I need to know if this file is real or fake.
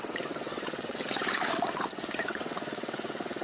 fake